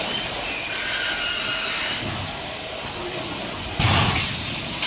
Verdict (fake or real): real